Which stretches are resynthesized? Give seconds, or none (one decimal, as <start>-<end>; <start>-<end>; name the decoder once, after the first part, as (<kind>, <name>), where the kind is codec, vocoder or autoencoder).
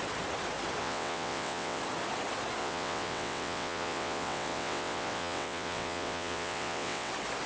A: 0.8-1.8 (vocoder, WaveNeXt); 2.6-7.1